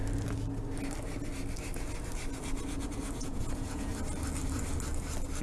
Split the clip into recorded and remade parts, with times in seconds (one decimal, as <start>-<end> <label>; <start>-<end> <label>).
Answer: 0.0-3.2 recorded; 3.2-3.9 remade; 3.9-5.4 recorded